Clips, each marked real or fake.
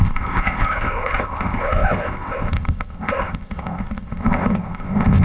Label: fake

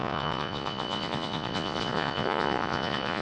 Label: fake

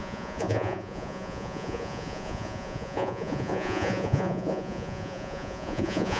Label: fake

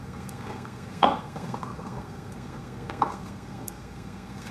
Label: fake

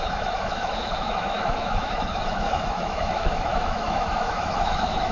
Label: fake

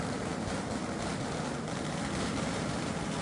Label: fake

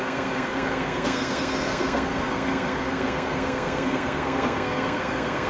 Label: fake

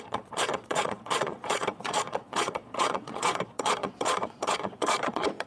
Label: fake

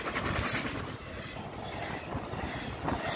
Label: real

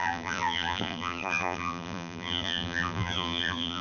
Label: fake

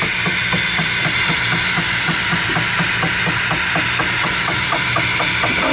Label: real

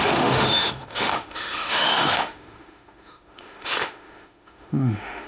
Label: fake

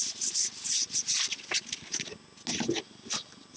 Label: real